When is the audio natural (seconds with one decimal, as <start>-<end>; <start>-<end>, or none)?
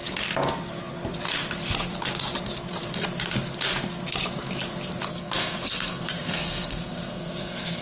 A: 0.0-5.1